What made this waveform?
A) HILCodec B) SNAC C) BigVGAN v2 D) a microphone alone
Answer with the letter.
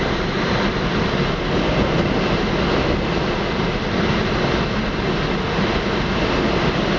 D